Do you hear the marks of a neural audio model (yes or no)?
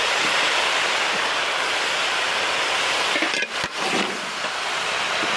no